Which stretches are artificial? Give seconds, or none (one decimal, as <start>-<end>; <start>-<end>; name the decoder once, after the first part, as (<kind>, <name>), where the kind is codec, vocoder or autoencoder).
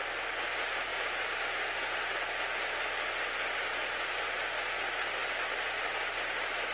none